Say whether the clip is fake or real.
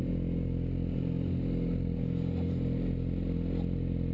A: real